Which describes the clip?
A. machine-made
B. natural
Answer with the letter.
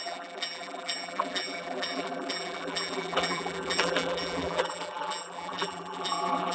A